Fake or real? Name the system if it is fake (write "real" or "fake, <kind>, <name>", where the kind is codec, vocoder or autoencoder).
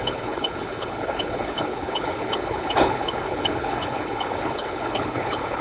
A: fake, codec, HILCodec